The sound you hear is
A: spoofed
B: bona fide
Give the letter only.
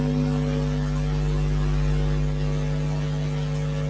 B